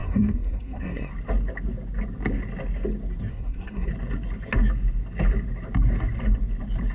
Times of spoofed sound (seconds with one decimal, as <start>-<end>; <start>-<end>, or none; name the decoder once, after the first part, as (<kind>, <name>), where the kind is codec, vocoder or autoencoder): 0.0-1.1 (codec, SNAC); 3.3-3.9